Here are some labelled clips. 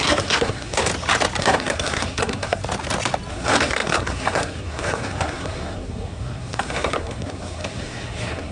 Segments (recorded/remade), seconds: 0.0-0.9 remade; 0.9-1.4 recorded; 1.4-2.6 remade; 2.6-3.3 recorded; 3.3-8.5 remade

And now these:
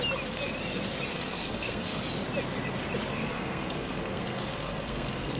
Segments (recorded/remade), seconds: 0.0-1.1 recorded; 1.1-2.0 remade; 2.0-3.1 recorded; 3.1-5.4 remade

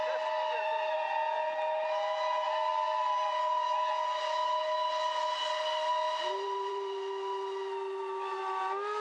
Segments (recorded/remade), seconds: 0.0-9.0 recorded

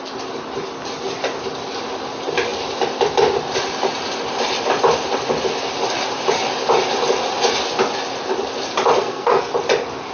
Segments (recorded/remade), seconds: 0.0-9.0 recorded; 9.0-9.5 remade; 9.5-10.1 recorded

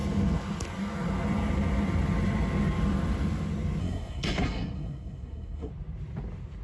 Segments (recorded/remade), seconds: 0.0-3.8 recorded; 3.8-5.7 remade; 5.7-6.6 recorded

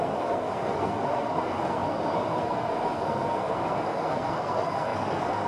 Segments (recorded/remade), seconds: 0.0-5.5 remade

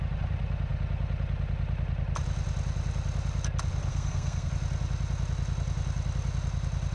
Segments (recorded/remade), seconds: 0.0-3.9 recorded; 3.9-4.5 remade; 4.5-6.9 recorded

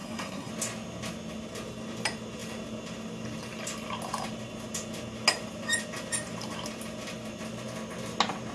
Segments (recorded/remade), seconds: 0.0-0.5 remade; 0.5-8.5 recorded